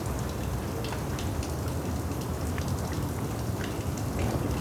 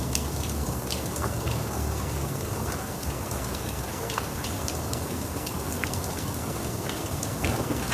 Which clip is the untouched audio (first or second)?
first